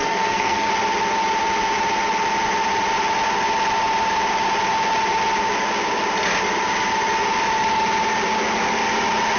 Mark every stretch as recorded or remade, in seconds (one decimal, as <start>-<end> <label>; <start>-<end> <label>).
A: 0.0-0.7 remade; 0.7-9.4 recorded